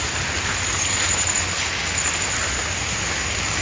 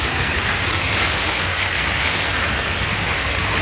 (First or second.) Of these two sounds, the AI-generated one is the second